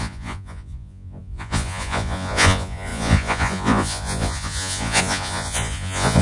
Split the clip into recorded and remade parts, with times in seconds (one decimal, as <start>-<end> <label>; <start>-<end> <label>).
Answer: 0.0-6.2 remade